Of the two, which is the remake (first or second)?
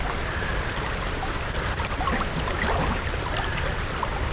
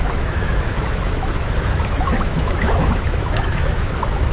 second